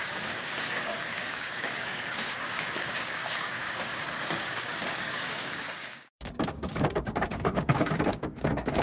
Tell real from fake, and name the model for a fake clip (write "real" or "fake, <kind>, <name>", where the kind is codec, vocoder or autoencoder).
fake, codec, DAC